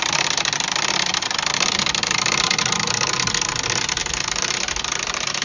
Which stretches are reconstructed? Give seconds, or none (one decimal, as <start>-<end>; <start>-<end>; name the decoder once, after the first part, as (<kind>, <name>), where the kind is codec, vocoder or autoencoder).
none